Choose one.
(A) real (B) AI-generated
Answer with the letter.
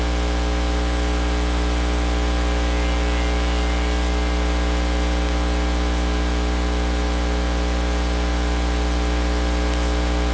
A